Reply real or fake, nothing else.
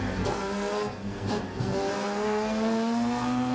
fake